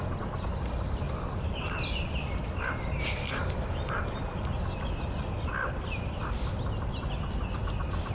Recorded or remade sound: recorded